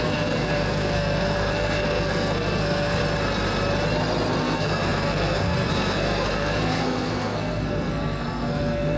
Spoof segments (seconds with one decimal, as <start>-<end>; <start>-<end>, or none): 0.0-3.0; 4.4-9.0